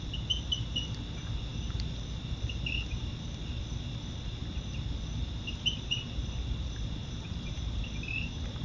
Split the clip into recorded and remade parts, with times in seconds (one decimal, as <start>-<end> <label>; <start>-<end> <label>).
0.0-7.0 recorded; 7.0-7.8 remade; 7.8-8.6 recorded